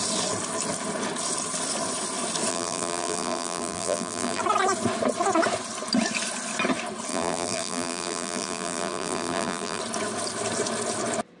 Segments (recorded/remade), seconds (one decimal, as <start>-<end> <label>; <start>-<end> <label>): 0.0-2.5 recorded; 2.5-4.4 remade; 4.4-7.1 recorded; 7.1-9.8 remade; 9.8-11.4 recorded